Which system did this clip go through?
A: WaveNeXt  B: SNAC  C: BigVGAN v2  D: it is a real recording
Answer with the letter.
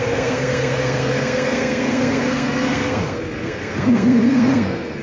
B